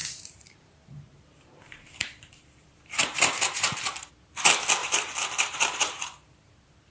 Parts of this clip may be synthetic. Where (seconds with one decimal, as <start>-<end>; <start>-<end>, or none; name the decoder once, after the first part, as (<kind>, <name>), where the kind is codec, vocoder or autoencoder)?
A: 0.0-4.1 (vocoder, BigVGAN v2); 4.8-6.5